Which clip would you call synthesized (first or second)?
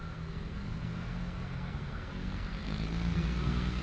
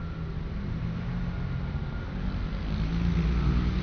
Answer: first